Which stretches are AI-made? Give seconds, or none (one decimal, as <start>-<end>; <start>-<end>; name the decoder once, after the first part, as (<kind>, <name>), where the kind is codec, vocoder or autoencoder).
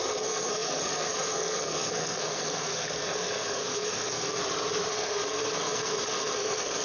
0.0-4.4 (codec, SNAC); 4.9-6.8